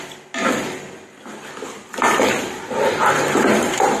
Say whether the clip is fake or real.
real